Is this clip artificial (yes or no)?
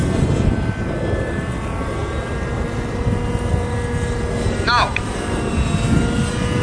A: no